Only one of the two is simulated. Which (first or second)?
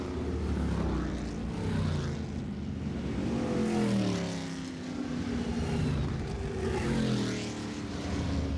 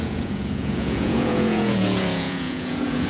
second